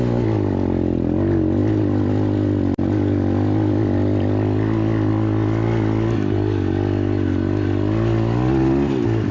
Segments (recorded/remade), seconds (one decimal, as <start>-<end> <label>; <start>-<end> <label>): 0.0-9.3 recorded